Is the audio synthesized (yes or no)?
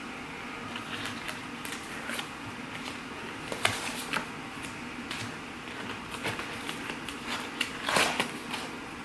no